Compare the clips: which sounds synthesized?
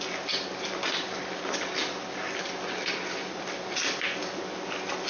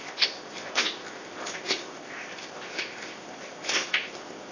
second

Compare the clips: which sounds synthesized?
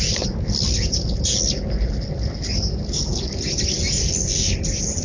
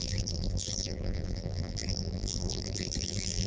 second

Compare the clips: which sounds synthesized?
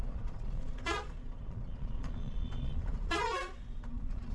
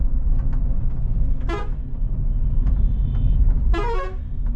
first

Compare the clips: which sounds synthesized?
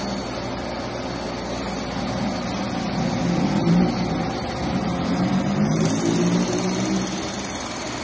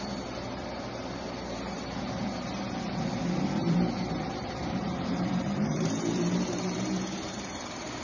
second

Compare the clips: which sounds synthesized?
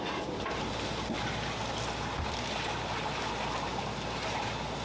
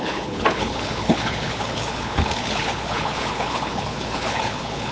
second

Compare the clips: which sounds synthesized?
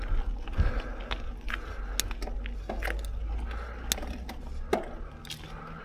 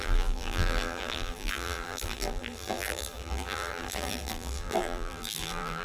second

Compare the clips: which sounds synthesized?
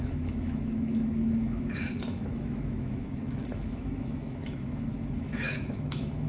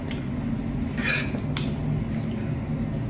first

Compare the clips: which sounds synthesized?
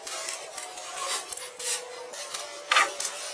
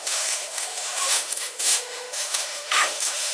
second